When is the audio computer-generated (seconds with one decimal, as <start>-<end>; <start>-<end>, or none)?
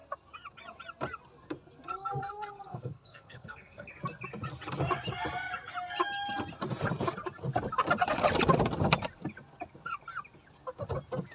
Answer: 1.9-3.9